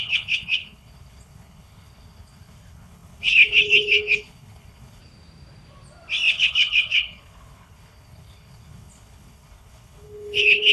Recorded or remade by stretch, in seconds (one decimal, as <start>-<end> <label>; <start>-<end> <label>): 0.0-5.0 remade; 5.0-6.3 recorded; 6.3-10.7 remade

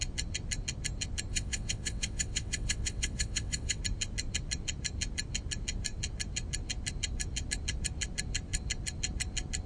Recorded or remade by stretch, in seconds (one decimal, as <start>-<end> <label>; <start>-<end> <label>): 0.0-1.3 recorded; 1.3-3.8 remade; 3.8-9.7 recorded

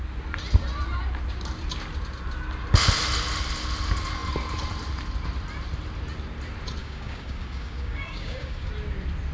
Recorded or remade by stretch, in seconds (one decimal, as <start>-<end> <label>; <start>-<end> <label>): 0.0-6.8 recorded; 6.8-8.7 remade; 8.7-9.3 recorded

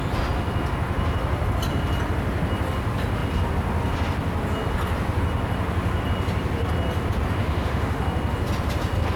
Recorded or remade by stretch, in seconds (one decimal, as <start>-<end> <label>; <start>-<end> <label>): 0.0-7.4 recorded; 7.4-8.0 remade; 8.0-9.2 recorded